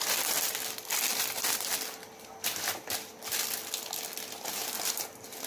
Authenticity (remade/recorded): remade